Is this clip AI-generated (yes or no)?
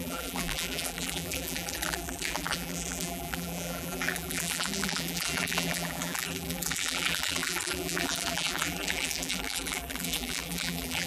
yes